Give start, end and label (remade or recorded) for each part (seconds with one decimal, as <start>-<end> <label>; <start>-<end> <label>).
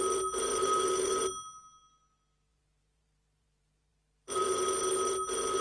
0.0-0.5 recorded; 0.5-1.3 remade; 1.3-2.5 recorded; 2.5-4.7 remade; 4.7-5.6 recorded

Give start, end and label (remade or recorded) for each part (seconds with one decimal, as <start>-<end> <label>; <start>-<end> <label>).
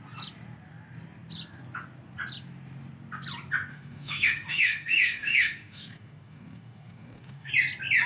0.0-3.7 recorded; 3.7-7.5 remade; 7.5-8.1 recorded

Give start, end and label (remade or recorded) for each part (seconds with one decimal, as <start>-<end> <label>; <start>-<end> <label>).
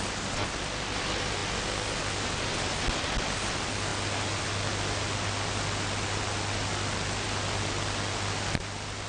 0.0-9.1 recorded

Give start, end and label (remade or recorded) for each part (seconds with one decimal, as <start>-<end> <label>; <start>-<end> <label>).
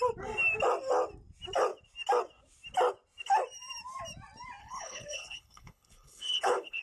0.0-4.6 recorded; 4.6-6.8 remade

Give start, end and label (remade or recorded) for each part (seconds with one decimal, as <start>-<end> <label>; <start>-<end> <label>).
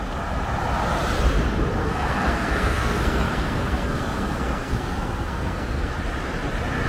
0.0-1.8 recorded; 1.8-5.9 remade; 5.9-6.9 recorded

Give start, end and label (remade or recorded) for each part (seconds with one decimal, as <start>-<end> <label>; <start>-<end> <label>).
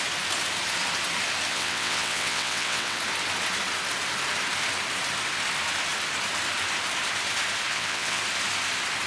0.0-1.5 recorded; 1.5-3.0 remade; 3.0-7.7 recorded; 7.7-8.2 remade; 8.2-9.1 recorded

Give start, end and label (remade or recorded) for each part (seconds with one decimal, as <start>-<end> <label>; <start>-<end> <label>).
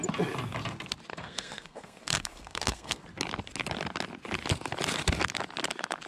0.0-1.1 recorded; 1.1-3.0 remade; 3.0-6.1 recorded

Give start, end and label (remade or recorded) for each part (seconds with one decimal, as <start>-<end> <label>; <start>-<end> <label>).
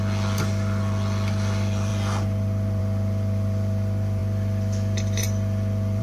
0.0-4.2 recorded; 4.2-6.0 remade